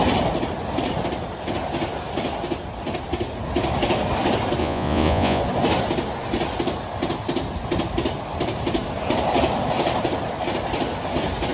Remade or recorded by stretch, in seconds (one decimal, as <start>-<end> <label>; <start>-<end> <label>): 0.0-4.6 recorded; 4.6-5.4 remade; 5.4-11.5 recorded